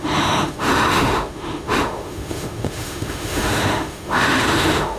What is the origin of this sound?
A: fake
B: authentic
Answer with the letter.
A